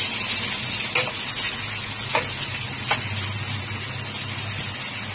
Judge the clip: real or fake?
real